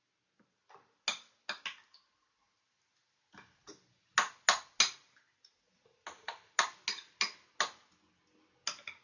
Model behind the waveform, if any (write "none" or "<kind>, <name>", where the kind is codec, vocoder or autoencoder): none